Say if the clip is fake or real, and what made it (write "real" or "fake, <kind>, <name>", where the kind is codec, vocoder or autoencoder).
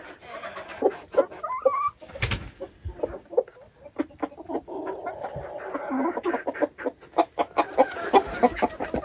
real